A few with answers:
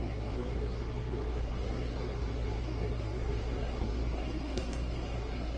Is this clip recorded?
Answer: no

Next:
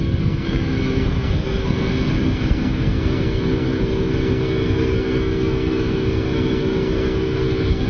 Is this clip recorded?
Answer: no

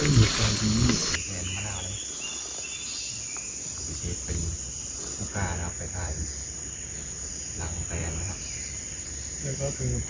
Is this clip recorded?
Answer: yes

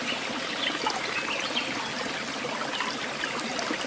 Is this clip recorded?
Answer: yes